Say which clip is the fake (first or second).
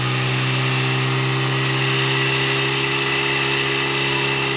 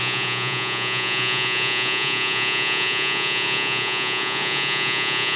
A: second